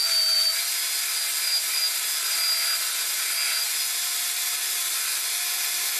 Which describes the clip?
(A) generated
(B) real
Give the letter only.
B